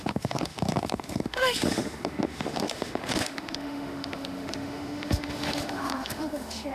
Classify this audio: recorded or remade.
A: remade